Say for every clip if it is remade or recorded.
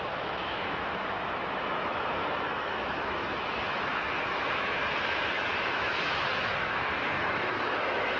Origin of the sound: remade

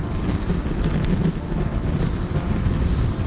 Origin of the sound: recorded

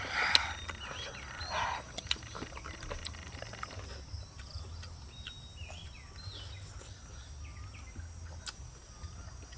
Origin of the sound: recorded